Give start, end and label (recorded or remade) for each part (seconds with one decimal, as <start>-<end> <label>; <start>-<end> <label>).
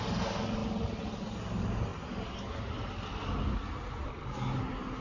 0.0-5.0 recorded